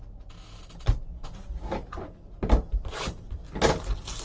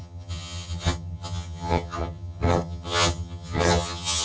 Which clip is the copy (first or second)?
second